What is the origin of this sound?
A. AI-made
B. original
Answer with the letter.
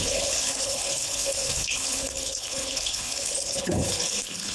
A